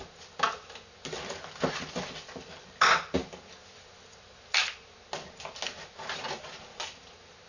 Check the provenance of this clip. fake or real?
real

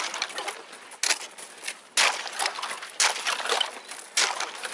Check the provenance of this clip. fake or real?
real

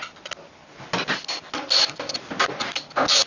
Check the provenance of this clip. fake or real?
real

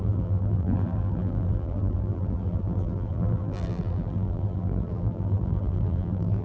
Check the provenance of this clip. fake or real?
fake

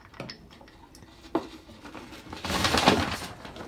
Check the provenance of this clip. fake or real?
real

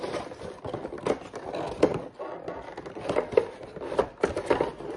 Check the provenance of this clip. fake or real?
real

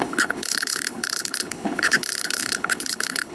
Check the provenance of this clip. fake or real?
fake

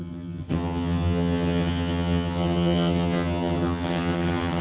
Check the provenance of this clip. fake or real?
fake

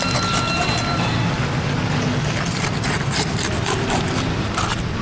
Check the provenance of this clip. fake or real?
real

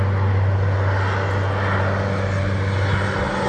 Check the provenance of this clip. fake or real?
real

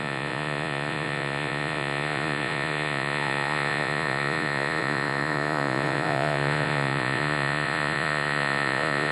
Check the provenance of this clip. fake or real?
fake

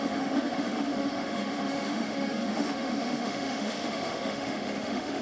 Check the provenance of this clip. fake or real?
fake